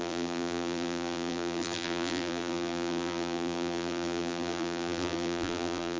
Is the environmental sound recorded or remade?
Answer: remade